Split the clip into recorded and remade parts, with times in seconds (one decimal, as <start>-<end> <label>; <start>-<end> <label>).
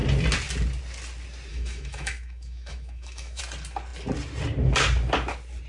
0.0-1.5 recorded; 1.5-3.4 remade; 3.4-5.7 recorded